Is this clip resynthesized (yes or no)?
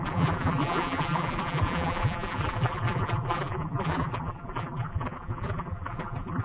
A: yes